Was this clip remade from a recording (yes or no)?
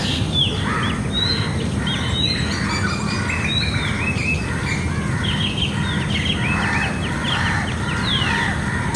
no